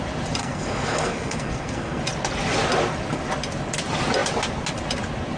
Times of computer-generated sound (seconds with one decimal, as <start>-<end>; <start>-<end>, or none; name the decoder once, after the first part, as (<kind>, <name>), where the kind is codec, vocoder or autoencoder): 0.4-2.0 (codec, SNAC)